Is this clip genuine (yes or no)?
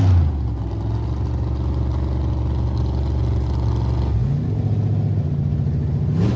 yes